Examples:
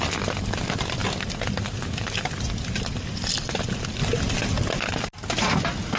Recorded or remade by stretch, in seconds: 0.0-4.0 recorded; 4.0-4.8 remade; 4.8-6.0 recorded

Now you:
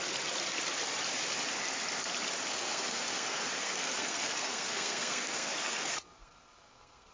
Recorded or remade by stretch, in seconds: 0.0-2.5 recorded; 2.5-7.1 remade

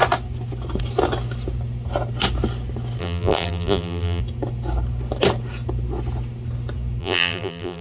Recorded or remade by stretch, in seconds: 0.0-3.0 recorded; 3.0-4.2 remade; 4.2-7.0 recorded; 7.0-7.8 remade

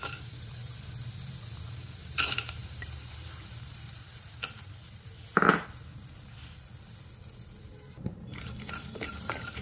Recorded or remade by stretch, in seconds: 0.0-0.6 remade; 0.6-1.6 recorded; 1.6-4.8 remade; 4.8-7.6 recorded; 7.6-9.6 remade

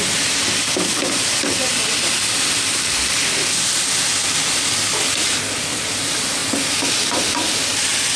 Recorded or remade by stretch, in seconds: 0.0-8.2 recorded